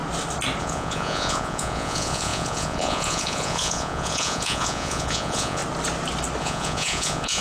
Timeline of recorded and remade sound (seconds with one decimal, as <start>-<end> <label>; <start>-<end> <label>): 0.0-0.6 recorded; 0.6-5.6 remade; 5.6-6.4 recorded; 6.4-7.4 remade